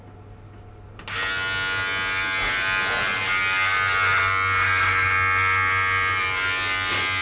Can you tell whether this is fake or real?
real